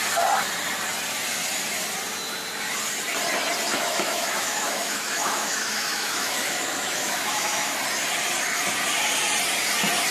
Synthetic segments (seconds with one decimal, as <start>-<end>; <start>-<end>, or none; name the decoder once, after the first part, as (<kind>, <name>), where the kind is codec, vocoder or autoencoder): 3.7-7.8 (autoencoder, DAC-VAE)